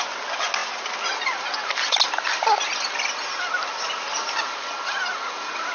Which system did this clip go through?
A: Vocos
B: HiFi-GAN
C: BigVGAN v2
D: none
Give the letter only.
D